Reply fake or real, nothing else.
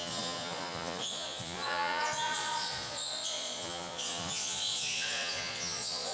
fake